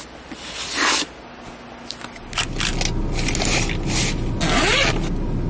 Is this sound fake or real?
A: real